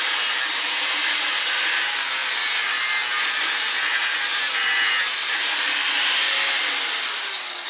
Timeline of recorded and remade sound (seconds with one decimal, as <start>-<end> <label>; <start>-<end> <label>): 0.0-7.7 recorded